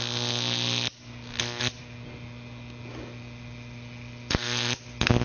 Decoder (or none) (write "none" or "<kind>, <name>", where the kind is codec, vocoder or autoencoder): none